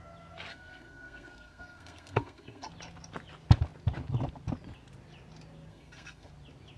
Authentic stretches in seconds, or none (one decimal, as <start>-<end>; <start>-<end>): 0.0-0.5; 2.7-5.7; 6.3-6.8